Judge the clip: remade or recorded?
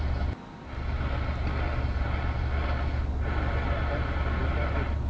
recorded